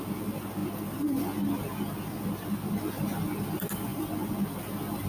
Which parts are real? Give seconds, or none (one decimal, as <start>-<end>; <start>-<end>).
0.0-5.1